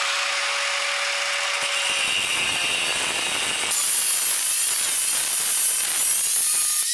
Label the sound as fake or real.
real